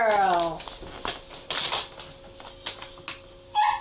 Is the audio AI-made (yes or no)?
no